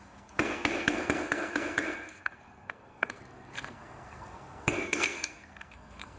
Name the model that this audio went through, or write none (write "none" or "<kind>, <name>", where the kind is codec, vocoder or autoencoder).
codec, SNAC